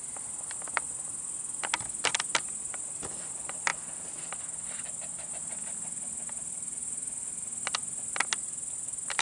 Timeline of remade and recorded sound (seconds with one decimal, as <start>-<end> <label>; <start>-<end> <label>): 0.0-9.2 recorded